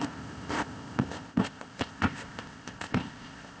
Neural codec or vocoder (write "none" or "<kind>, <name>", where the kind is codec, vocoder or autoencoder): codec, ZipCodec